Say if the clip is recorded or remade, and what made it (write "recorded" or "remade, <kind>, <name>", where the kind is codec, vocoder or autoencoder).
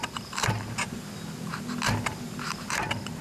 recorded